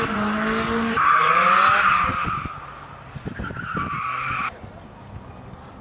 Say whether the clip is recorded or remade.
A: recorded